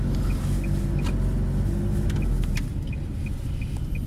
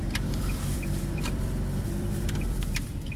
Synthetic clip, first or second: second